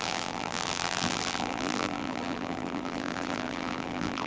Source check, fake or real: fake